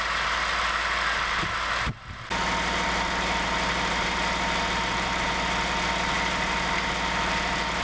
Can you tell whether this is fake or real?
real